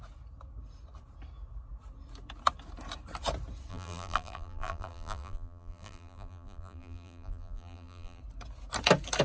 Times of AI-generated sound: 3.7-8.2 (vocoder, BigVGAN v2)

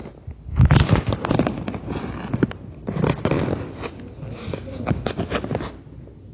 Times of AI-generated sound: none

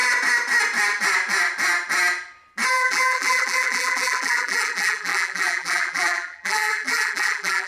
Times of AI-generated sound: 2.7-7.7 (vocoder, BigVGAN v2)